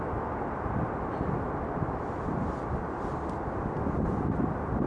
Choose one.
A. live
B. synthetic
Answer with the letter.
A